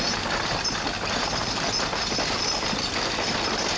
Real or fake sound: real